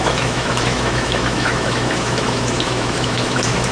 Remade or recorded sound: remade